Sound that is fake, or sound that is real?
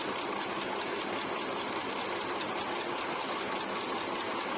real